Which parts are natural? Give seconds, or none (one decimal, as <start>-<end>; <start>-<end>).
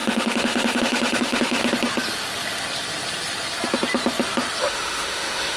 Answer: 1.6-4.6